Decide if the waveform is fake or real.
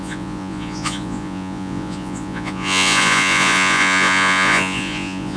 fake